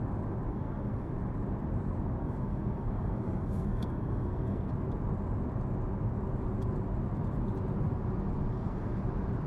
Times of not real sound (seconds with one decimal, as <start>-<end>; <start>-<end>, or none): 0.5-1.1; 2.2-4.7; 8.5-9.0